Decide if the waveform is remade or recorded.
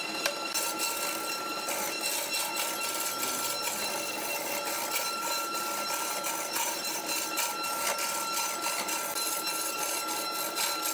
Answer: recorded